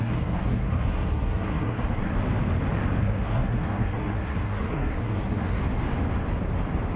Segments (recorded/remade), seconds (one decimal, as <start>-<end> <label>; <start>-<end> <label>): 0.0-2.1 remade; 2.1-3.0 recorded; 3.0-5.6 remade; 5.6-7.0 recorded

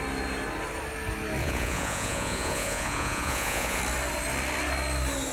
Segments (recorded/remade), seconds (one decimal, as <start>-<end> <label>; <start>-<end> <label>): 0.0-1.4 recorded; 1.4-3.8 remade; 3.8-5.3 recorded

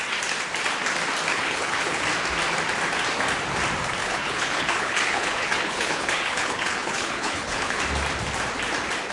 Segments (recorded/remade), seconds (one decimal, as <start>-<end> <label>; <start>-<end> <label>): 0.0-1.3 recorded; 1.3-2.0 remade; 2.0-4.0 recorded; 4.0-7.8 remade; 7.8-9.1 recorded

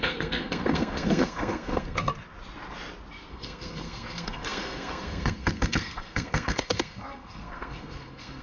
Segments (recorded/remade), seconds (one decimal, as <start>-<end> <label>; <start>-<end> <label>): 0.0-2.1 remade; 2.1-3.3 recorded; 3.3-8.4 remade

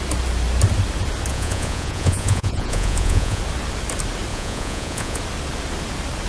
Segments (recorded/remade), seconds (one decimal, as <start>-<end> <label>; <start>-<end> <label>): 0.0-1.3 recorded; 1.3-3.4 remade; 3.4-4.3 recorded; 4.3-5.2 remade; 5.2-6.3 recorded